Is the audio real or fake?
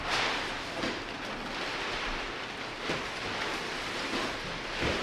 real